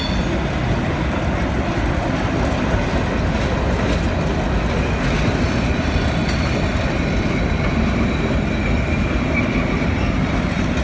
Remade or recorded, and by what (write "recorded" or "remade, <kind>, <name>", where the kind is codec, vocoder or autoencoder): recorded